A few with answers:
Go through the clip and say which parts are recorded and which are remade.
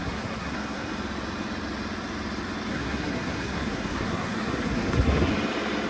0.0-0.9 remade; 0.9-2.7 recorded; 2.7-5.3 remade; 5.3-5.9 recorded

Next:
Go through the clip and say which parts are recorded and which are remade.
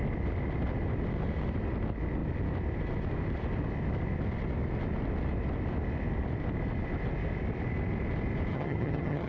0.0-8.5 recorded; 8.5-9.3 remade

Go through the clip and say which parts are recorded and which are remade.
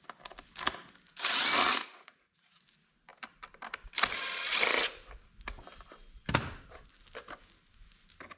0.0-1.8 recorded; 1.8-2.6 remade; 2.6-8.4 recorded